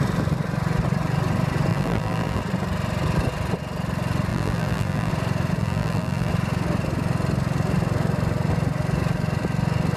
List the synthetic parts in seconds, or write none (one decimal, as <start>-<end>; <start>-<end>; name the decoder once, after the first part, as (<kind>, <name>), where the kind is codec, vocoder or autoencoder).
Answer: 1.7-2.4 (vocoder, BigVGAN v2); 4.3-5.1; 5.6-6.3